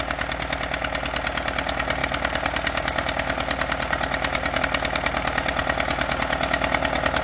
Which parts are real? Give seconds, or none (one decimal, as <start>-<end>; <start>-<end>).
0.0-2.0; 4.6-7.2